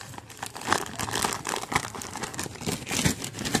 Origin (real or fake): real